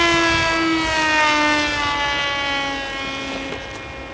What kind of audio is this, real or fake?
real